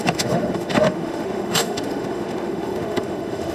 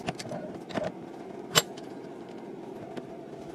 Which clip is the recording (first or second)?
second